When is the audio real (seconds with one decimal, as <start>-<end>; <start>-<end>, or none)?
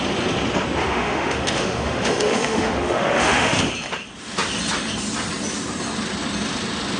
0.0-0.8; 3.6-7.0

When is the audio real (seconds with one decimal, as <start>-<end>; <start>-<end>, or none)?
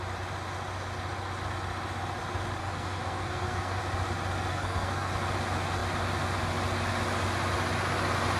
0.0-2.6; 3.8-4.5; 5.1-8.4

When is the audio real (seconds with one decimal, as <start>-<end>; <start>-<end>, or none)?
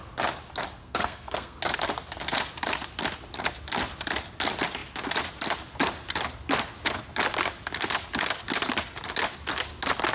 0.0-0.8; 1.6-10.1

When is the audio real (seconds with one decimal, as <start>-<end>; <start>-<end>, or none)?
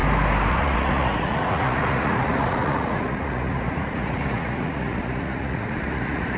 0.0-0.5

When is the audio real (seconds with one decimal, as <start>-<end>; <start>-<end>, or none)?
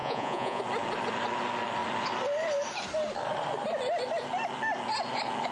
0.6-5.5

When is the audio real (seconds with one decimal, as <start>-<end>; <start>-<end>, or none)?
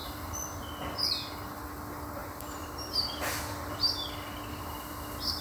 0.7-2.2; 3.4-5.4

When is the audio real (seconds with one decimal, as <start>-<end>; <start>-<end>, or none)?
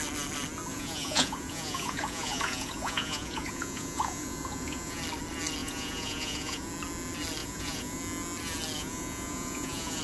0.0-0.7; 5.0-5.6; 6.7-7.4; 8.0-8.8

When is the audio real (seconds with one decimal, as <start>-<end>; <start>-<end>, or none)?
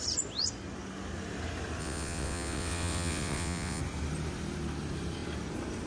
0.0-1.8; 3.8-5.9